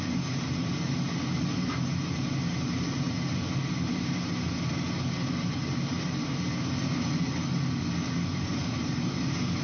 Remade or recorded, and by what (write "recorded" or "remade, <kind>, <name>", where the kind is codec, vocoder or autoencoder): recorded